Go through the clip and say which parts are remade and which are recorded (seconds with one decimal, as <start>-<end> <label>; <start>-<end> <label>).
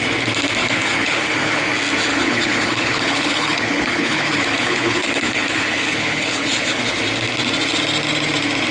0.0-0.6 recorded; 0.6-1.6 remade; 1.6-2.1 recorded; 2.1-6.8 remade; 6.8-8.7 recorded